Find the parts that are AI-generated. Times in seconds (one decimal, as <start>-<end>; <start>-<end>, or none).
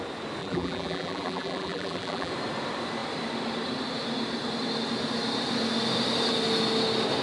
0.4-2.3